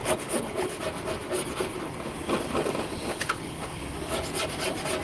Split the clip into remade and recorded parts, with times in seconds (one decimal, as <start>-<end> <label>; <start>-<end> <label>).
0.0-0.8 remade; 0.8-3.1 recorded; 3.1-3.8 remade; 3.8-5.0 recorded